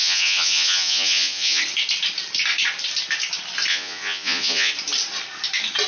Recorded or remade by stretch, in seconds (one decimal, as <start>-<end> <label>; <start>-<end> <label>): 0.0-1.6 remade; 1.6-3.7 recorded; 3.7-4.7 remade; 4.7-5.9 recorded